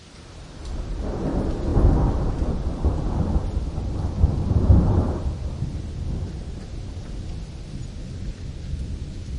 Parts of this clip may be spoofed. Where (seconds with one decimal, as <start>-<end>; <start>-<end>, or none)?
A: none